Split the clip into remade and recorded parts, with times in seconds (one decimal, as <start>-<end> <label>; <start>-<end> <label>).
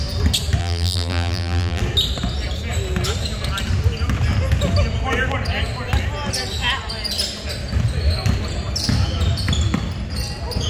0.0-0.6 recorded; 0.6-1.8 remade; 1.8-10.7 recorded